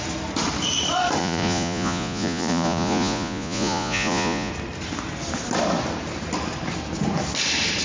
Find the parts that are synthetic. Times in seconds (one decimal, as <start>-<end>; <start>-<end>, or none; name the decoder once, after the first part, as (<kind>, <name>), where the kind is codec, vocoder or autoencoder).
1.2-4.5 (vocoder, Vocos)